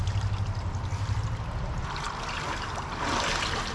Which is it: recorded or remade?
recorded